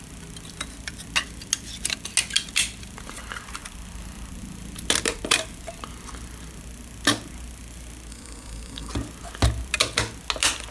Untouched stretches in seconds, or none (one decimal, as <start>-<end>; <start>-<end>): 0.0-8.1; 8.9-10.7